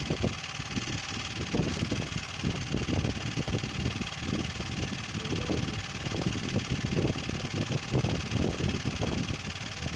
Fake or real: real